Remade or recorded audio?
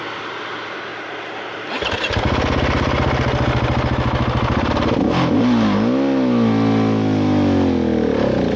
recorded